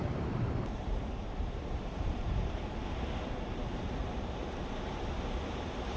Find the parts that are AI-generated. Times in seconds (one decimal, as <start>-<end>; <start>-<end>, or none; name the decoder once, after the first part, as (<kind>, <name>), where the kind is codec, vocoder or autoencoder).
0.0-4.0 (vocoder, BigVGAN v2)